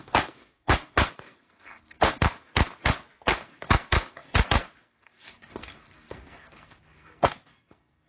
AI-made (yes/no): yes